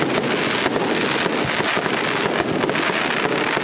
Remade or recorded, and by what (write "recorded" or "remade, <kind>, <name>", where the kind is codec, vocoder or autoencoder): recorded